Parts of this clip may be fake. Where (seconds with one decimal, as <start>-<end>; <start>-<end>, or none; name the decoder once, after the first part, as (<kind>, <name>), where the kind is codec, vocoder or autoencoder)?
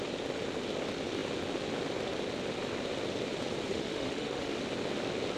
3.7-4.6 (autoencoder, DAC-VAE)